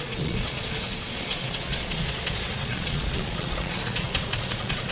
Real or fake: fake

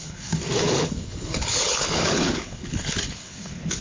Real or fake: fake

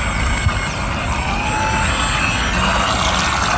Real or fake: real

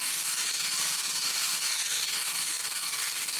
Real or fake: fake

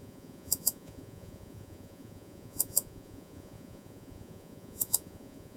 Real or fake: fake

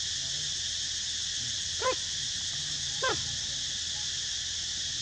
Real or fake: real